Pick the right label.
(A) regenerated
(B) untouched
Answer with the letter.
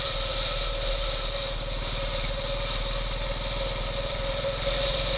B